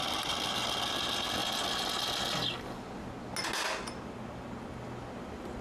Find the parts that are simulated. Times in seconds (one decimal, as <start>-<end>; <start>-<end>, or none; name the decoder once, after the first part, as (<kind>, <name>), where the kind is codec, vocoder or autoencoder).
none